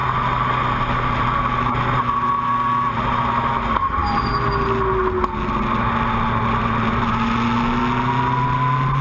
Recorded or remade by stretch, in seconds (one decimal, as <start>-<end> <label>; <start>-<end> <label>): 0.0-9.0 recorded